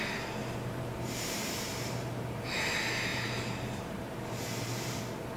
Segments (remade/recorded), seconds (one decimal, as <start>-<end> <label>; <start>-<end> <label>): 0.0-0.4 recorded; 0.4-2.6 remade; 2.6-3.1 recorded; 3.1-5.0 remade; 5.0-5.4 recorded